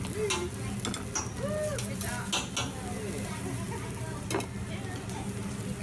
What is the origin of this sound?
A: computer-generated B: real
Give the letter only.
B